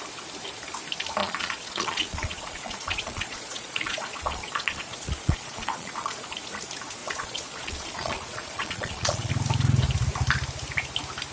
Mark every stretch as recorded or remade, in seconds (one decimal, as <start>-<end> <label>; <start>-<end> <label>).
0.0-1.2 recorded; 1.2-6.2 remade; 6.2-7.0 recorded; 7.0-9.3 remade; 9.3-11.3 recorded